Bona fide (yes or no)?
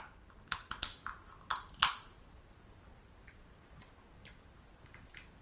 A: yes